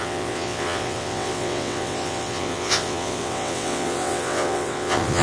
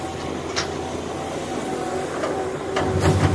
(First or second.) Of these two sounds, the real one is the second